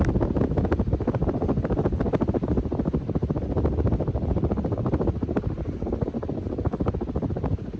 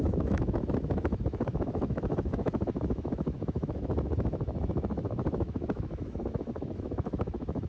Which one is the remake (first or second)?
second